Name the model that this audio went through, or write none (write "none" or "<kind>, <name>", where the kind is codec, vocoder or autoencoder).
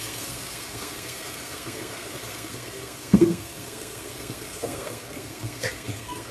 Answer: codec, SNAC